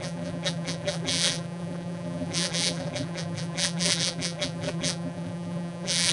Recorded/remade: remade